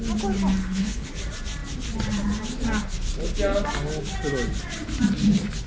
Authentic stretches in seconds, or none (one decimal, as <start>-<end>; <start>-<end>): 0.0-0.6; 1.1-5.7